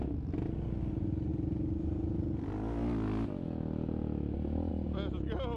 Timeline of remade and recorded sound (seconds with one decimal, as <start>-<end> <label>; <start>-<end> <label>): 0.0-5.6 recorded